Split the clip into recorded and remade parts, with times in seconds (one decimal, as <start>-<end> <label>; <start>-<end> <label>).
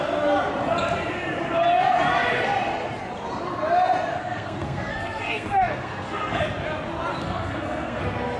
0.0-4.2 recorded; 4.2-6.4 remade; 6.4-7.1 recorded; 7.1-8.0 remade; 8.0-8.4 recorded